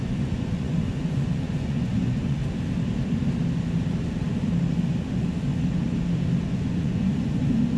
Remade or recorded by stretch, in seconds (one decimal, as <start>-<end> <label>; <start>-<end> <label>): 0.0-2.4 remade; 2.4-5.1 recorded; 5.1-5.8 remade; 5.8-6.4 recorded; 6.4-7.8 remade